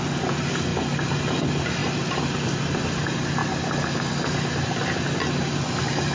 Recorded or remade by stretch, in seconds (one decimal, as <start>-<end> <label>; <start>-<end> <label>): 0.0-6.1 recorded